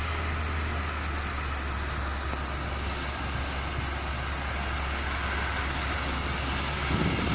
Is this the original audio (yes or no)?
yes